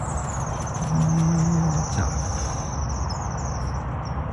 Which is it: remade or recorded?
recorded